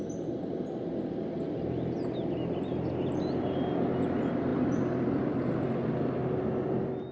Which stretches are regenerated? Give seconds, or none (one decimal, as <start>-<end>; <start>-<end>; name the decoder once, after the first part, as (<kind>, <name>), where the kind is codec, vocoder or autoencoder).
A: none